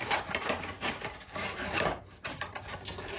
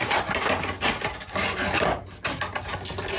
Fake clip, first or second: first